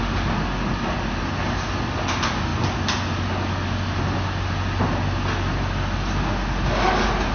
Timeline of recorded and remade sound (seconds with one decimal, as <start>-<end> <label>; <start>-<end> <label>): 0.0-7.3 recorded